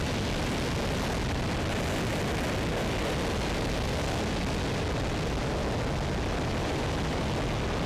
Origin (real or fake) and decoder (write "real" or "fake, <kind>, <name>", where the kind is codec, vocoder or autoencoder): real